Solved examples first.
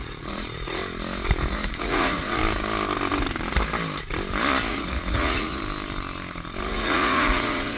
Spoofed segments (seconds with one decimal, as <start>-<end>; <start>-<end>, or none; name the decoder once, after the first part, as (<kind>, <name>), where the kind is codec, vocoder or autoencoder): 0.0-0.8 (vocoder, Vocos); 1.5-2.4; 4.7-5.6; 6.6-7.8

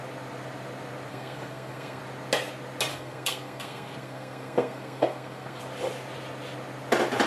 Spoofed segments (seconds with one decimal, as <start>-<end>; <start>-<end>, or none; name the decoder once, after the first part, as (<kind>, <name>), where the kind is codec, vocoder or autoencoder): 1.1-2.0 (codec, SNAC); 2.9-5.6

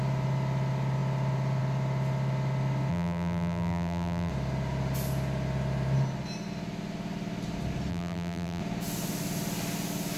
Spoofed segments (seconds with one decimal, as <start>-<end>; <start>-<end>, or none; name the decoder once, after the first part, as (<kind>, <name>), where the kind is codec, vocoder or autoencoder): 2.9-4.3 (vocoder, BigVGAN v2); 7.9-8.6

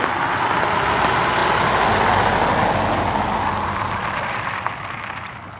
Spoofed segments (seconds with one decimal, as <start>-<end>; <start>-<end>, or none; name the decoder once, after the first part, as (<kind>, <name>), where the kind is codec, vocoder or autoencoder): none